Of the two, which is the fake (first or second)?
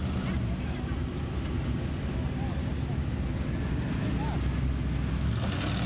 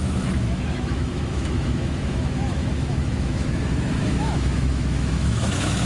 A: second